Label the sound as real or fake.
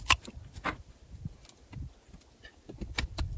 real